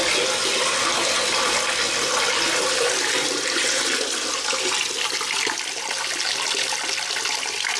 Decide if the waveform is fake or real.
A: real